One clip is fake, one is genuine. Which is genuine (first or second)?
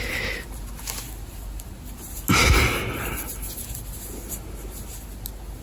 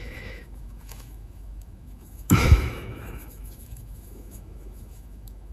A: first